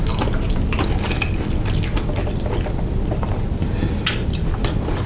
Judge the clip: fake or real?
real